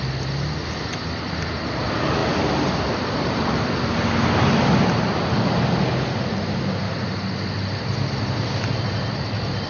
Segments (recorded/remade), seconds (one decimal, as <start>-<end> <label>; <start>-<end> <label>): 0.0-9.7 recorded